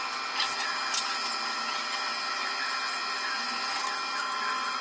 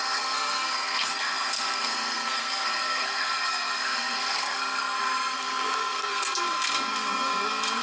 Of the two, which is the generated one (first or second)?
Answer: second